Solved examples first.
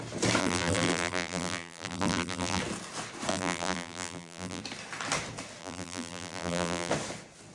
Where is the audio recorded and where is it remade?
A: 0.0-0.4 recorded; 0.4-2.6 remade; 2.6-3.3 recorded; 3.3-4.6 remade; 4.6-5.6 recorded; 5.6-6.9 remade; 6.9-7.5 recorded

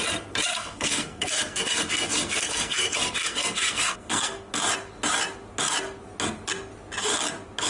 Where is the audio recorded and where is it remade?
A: 0.0-0.5 recorded; 0.5-4.5 remade; 4.5-7.7 recorded

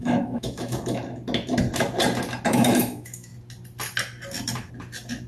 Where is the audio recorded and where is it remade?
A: 0.0-1.0 remade; 1.0-2.5 recorded; 2.5-3.3 remade; 3.3-5.3 recorded

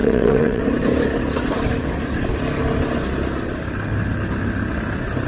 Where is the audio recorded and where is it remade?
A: 0.0-0.6 remade; 0.6-5.3 recorded